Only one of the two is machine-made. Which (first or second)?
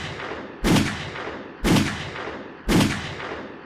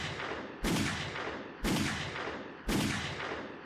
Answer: second